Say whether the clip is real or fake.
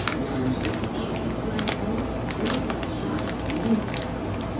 real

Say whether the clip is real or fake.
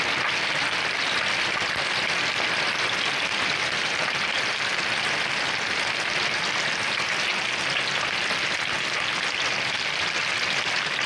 real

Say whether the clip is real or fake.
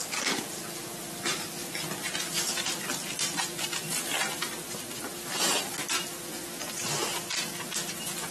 real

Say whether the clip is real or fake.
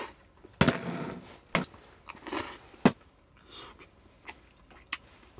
real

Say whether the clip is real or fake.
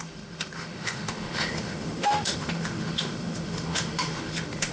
fake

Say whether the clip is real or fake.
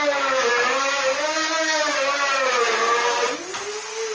real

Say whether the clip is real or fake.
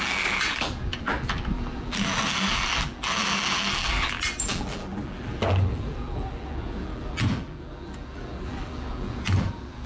fake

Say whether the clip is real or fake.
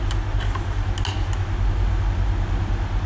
real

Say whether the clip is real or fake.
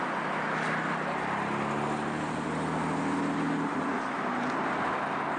real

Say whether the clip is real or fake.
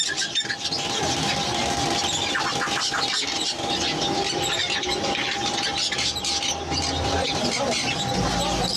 real